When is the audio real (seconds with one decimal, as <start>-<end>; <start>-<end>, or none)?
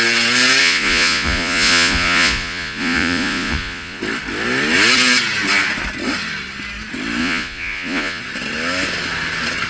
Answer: 0.0-0.6; 4.0-7.2; 8.2-9.7